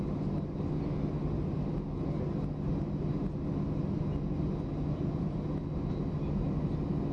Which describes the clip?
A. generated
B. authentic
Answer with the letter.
B